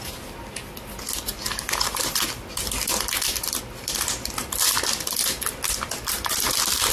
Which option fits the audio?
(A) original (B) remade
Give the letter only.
A